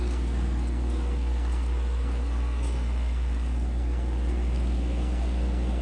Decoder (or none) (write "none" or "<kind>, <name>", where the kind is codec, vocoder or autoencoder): codec, SNAC